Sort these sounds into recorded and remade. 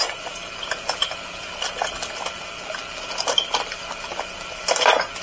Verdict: recorded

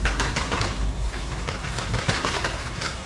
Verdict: remade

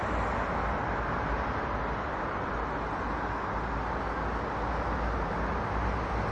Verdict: recorded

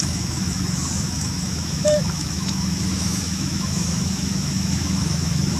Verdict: remade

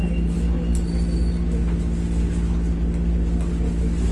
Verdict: recorded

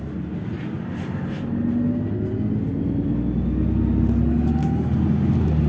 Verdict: recorded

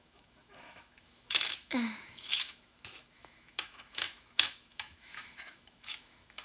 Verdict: remade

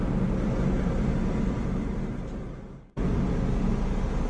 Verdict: recorded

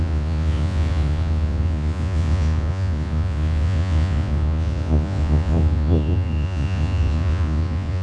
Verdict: remade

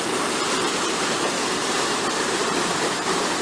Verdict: recorded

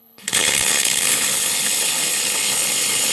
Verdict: remade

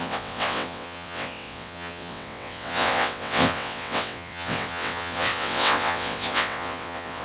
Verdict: remade